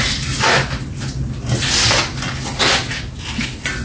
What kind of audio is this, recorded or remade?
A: recorded